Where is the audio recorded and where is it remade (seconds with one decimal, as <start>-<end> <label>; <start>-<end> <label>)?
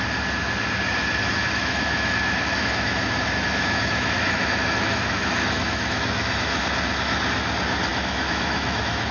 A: 0.0-1.4 recorded; 1.4-6.6 remade; 6.6-7.9 recorded; 7.9-9.1 remade